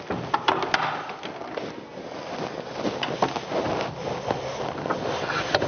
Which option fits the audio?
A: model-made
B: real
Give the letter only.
B